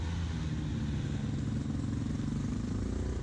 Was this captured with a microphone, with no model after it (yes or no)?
yes